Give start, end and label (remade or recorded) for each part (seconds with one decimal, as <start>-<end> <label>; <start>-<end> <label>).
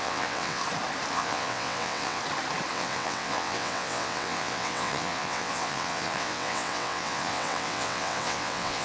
0.0-0.6 remade; 0.6-1.1 recorded; 1.1-2.2 remade; 2.2-2.7 recorded; 2.7-8.8 remade